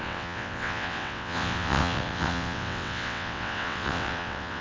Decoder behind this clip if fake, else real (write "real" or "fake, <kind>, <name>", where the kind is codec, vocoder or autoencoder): fake, vocoder, WaveNeXt